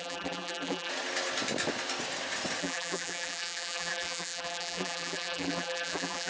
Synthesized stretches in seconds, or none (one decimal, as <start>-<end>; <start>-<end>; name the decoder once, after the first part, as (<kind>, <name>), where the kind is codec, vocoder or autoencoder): 0.0-0.9 (vocoder, BigVGAN v2); 2.6-6.3